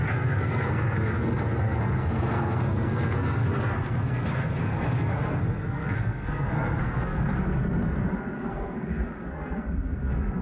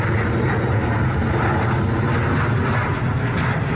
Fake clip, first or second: first